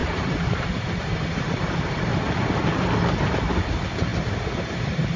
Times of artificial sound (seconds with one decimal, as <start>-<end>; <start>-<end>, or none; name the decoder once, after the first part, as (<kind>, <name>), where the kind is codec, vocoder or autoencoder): 0.0-2.1 (vocoder, BigVGAN v2); 3.2-5.2